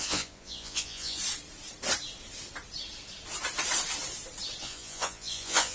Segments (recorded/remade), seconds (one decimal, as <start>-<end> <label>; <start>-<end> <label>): 0.0-1.2 remade; 1.2-4.6 recorded; 4.6-5.7 remade